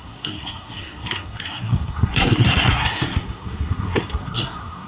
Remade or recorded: remade